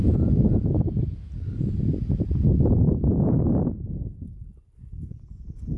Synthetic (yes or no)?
no